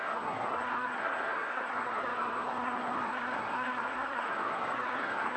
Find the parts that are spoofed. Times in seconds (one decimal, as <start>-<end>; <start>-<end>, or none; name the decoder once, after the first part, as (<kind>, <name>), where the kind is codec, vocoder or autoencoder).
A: 0.0-5.4 (codec, SNAC)